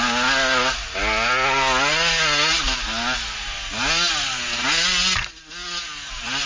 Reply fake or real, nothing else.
real